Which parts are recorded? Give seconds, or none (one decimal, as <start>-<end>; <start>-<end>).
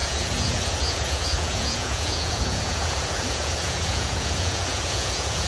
none